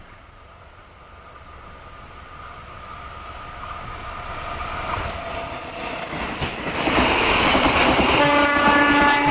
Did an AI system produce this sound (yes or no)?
no